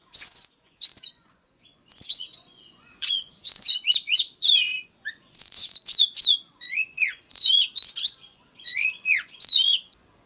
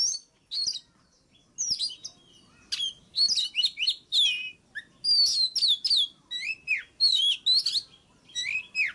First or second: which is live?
second